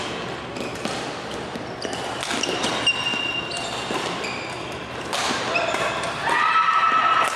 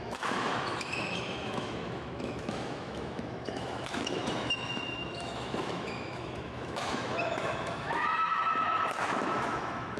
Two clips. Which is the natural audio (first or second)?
first